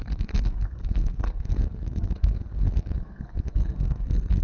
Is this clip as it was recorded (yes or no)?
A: no